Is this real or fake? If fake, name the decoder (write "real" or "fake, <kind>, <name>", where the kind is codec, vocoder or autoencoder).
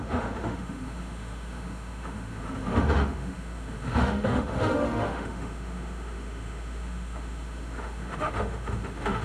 fake, autoencoder, DAC-VAE